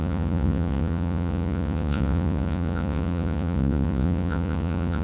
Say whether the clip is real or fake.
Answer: fake